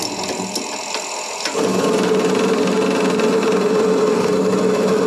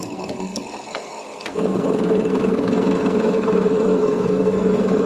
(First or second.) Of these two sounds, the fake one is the second